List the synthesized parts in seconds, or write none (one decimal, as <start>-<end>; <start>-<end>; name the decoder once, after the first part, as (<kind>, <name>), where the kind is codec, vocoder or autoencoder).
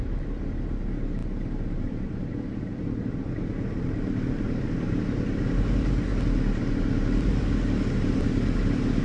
none